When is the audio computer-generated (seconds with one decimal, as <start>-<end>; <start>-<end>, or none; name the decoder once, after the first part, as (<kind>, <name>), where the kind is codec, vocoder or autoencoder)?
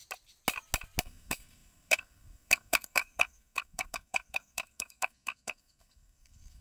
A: 1.0-6.6 (codec, SNAC)